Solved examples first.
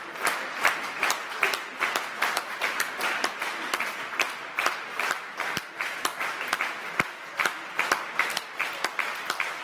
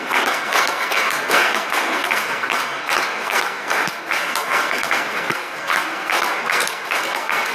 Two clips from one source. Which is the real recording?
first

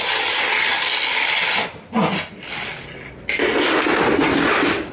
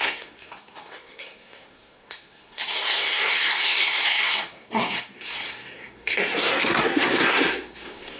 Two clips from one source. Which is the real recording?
first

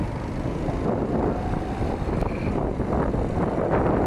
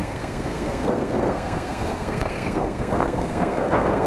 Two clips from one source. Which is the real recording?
first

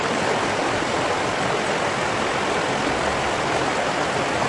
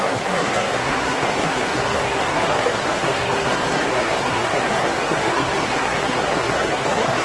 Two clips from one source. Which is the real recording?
first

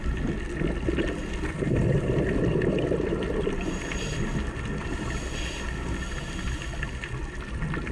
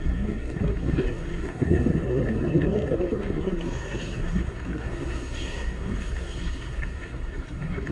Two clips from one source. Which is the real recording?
first